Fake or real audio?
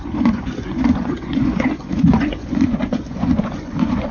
fake